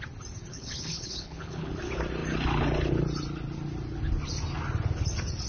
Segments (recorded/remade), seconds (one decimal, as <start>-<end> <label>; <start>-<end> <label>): 0.0-0.5 recorded; 0.5-1.7 remade; 1.7-5.5 recorded

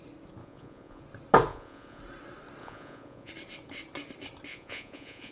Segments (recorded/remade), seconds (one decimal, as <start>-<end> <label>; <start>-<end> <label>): 0.0-0.4 recorded; 0.4-1.0 remade; 1.0-1.5 recorded; 1.5-2.0 remade; 2.0-2.6 recorded; 2.6-3.3 remade; 3.3-4.5 recorded; 4.5-5.3 remade